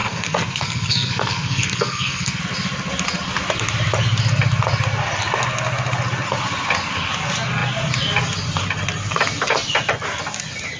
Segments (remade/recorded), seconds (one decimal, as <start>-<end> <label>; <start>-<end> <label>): 0.0-2.4 remade; 2.4-10.8 recorded